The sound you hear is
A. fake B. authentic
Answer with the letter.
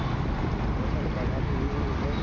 B